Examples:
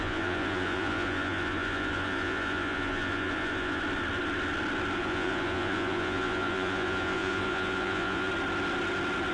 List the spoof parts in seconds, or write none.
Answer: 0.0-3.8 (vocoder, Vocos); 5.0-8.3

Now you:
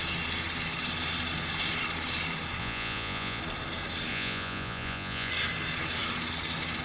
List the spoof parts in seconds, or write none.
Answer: 2.6-3.4 (vocoder, Vocos); 4.1-5.3

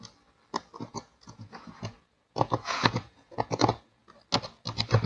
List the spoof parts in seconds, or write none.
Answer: 0.9-4.0 (vocoder, Vocos)

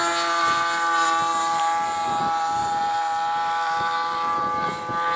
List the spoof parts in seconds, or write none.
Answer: none

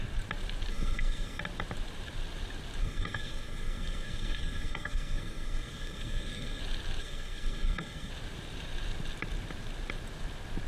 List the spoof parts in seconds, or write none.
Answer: 0.7-1.4 (codec, SNAC); 2.8-6.6; 7.0-8.1

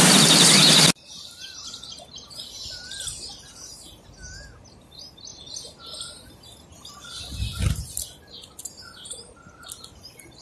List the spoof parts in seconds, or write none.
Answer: none